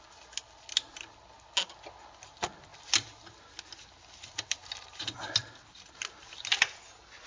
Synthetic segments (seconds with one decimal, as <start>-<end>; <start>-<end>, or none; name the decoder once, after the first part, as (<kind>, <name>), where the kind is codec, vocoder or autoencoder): none

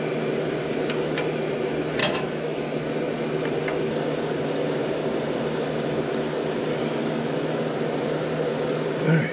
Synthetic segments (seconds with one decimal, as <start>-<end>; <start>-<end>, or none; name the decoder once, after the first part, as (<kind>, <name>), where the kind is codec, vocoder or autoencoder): 2.0-2.7 (autoencoder, DAC-VAE); 6.8-7.6